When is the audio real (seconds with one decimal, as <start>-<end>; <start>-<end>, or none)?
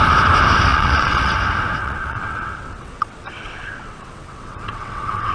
0.0-0.7; 1.3-1.8